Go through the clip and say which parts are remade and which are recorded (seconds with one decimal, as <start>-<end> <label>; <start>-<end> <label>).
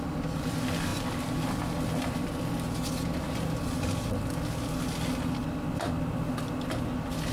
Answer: 0.0-7.3 recorded